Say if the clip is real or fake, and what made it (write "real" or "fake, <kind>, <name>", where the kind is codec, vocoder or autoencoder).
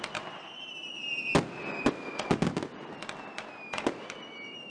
real